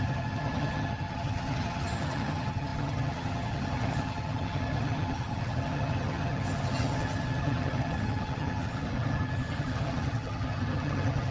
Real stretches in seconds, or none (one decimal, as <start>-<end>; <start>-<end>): none